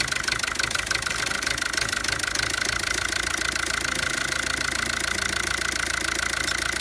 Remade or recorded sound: recorded